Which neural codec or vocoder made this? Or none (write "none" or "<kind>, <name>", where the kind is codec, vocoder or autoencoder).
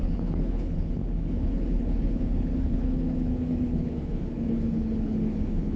codec, HILCodec